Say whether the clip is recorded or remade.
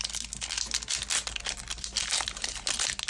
recorded